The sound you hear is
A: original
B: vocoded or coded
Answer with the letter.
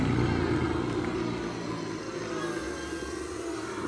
A